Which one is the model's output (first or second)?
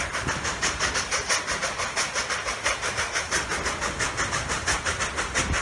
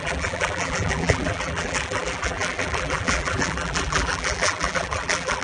second